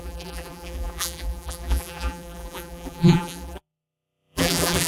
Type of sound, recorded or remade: remade